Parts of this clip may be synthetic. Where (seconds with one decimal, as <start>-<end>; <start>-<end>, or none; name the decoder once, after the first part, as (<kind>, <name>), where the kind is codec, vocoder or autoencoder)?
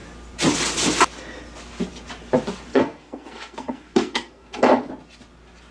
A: 2.7-4.9 (codec, SNAC)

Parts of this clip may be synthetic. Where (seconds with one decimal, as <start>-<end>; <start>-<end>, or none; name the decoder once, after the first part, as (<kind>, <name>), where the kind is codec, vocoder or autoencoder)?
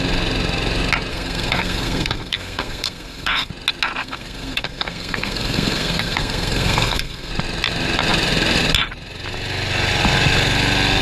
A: 1.1-3.5 (codec, SNAC); 4.0-7.3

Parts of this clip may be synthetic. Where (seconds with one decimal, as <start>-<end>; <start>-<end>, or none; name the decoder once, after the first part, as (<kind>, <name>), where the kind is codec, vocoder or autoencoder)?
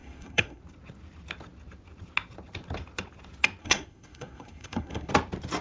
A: 0.0-0.6 (codec, SNAC); 3.6-5.1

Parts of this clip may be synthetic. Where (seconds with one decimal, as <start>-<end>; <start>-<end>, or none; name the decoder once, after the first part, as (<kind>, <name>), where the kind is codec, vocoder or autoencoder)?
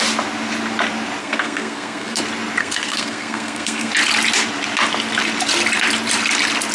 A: 1.2-2.2 (codec, SNAC); 2.6-3.9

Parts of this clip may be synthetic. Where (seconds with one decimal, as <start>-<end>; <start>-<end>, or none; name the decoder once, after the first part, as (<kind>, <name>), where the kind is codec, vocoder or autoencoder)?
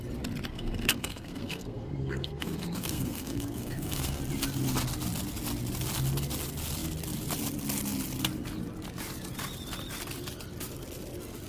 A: 0.5-4.2 (codec, SNAC)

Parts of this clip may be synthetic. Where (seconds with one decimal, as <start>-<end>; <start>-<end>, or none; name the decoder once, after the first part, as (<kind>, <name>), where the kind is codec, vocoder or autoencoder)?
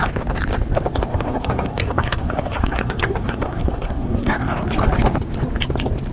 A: 1.1-4.4 (codec, SNAC)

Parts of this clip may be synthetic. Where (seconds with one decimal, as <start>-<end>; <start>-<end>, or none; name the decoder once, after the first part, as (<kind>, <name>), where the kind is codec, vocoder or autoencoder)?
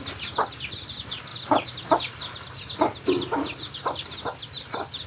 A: none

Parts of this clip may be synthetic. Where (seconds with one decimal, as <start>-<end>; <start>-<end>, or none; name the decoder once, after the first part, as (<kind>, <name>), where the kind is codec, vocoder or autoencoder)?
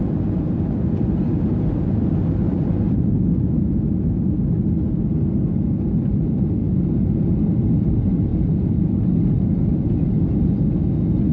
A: none